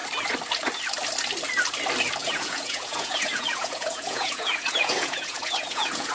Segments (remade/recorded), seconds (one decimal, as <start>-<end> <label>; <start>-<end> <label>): 0.0-2.2 recorded; 2.2-6.1 remade